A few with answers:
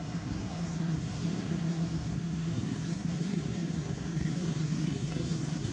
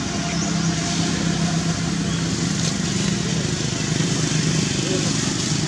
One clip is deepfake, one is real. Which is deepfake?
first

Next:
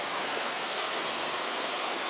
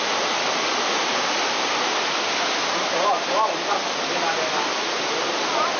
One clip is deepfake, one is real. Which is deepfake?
first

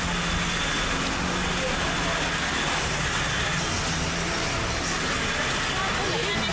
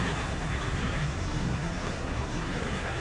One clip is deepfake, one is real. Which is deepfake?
second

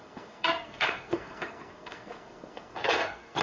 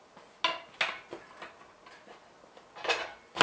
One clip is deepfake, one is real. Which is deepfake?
first